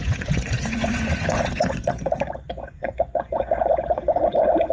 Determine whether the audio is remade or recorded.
remade